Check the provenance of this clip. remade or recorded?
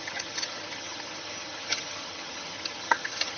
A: remade